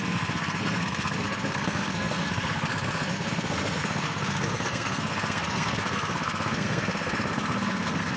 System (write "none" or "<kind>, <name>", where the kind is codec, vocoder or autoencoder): codec, SNAC